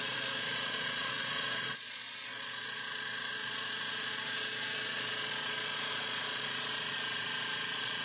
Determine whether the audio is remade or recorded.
remade